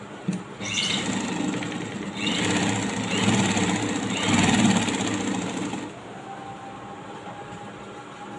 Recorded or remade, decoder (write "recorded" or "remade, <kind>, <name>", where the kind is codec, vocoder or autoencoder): recorded